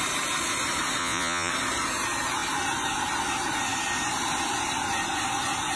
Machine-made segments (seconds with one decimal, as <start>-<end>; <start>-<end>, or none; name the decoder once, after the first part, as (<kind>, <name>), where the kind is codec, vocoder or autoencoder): 1.0-1.5 (vocoder, Vocos)